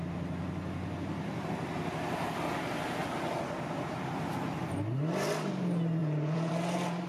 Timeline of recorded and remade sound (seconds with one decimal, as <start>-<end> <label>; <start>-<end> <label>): 0.0-6.0 recorded; 6.0-6.5 remade; 6.5-7.1 recorded